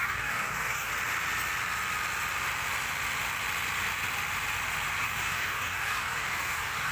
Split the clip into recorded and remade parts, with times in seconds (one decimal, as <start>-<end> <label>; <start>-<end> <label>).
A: 0.0-0.9 remade; 0.9-5.0 recorded; 5.0-6.9 remade